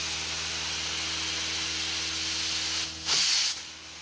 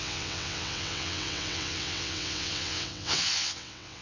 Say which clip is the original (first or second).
first